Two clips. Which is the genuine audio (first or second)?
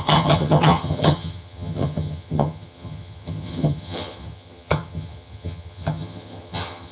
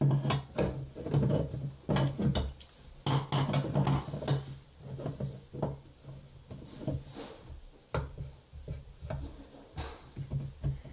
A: second